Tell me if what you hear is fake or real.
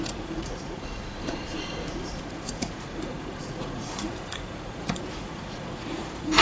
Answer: fake